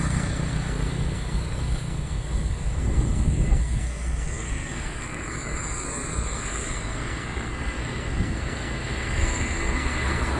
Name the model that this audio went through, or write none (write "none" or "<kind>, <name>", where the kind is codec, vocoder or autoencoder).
codec, SNAC